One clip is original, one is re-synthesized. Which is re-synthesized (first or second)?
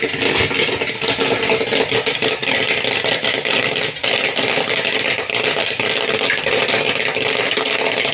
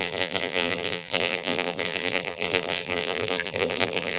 second